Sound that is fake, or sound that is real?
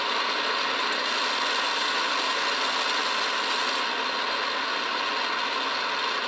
real